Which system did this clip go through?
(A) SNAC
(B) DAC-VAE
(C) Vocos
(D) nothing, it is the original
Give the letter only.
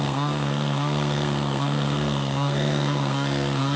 A